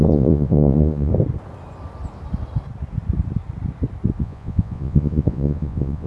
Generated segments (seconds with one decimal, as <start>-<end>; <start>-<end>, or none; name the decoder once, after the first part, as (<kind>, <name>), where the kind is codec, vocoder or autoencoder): 0.0-1.1 (vocoder, Vocos); 4.2-6.1